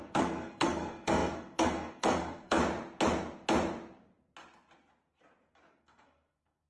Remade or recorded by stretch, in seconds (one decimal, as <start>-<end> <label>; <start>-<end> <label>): 0.0-2.6 remade; 2.6-5.8 recorded; 5.8-6.7 remade